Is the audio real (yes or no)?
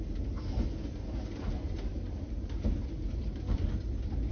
yes